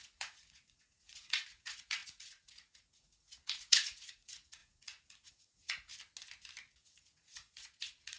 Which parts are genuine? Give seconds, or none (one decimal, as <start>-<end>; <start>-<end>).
5.9-6.7